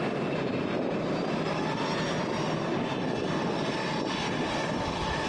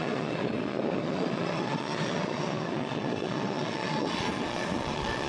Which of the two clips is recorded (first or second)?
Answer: first